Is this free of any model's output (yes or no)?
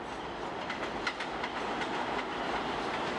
yes